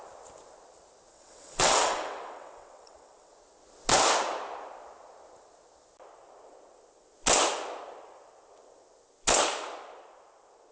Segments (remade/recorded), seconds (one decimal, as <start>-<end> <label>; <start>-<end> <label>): 0.0-1.1 recorded; 1.1-3.3 remade; 3.3-10.7 recorded